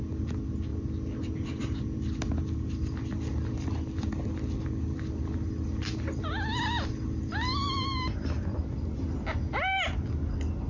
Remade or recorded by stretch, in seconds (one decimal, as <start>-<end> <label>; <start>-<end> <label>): 0.0-10.7 recorded